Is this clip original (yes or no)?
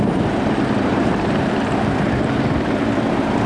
no